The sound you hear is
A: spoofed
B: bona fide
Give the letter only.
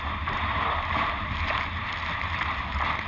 B